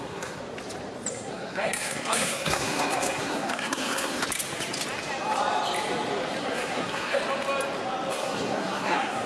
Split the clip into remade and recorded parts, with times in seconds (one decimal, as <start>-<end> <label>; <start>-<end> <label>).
0.0-0.4 remade; 0.4-1.1 recorded; 1.1-4.2 remade; 4.2-6.4 recorded; 6.4-7.2 remade; 7.2-8.1 recorded; 8.1-9.3 remade